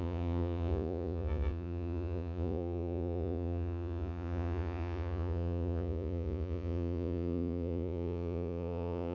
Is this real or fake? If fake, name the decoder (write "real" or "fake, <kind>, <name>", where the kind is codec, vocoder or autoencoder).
fake, vocoder, Vocos